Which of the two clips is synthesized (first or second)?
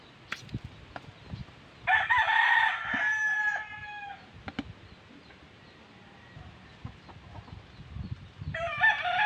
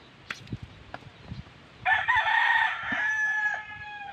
second